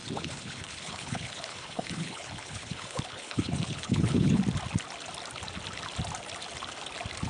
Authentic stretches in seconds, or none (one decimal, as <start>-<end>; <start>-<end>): 4.4-7.3